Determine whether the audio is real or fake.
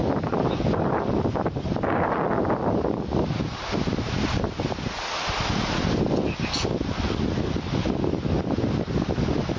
real